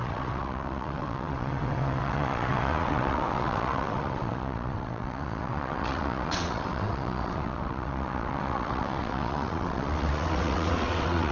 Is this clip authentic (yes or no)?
no